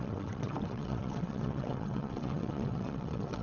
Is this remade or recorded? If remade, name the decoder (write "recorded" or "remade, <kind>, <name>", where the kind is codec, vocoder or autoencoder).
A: remade, vocoder, WaveNeXt